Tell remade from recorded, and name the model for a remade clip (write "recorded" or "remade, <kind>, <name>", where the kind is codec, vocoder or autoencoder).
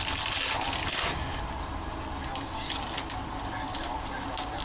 recorded